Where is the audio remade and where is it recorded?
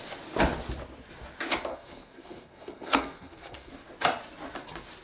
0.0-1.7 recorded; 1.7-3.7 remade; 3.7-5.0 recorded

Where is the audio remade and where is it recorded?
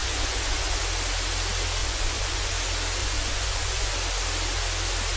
0.0-0.8 remade; 0.8-1.8 recorded; 1.8-2.5 remade; 2.5-3.0 recorded; 3.0-3.9 remade; 3.9-5.2 recorded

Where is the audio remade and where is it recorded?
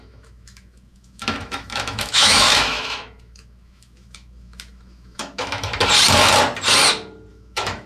0.0-5.7 remade; 5.7-7.3 recorded; 7.3-7.9 remade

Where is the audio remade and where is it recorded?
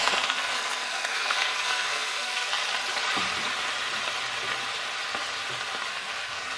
0.0-2.6 remade; 2.6-5.9 recorded; 5.9-6.6 remade